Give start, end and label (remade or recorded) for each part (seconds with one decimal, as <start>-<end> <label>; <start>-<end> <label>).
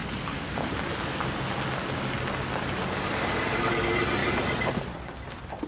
0.0-4.2 recorded; 4.2-4.7 remade; 4.7-5.7 recorded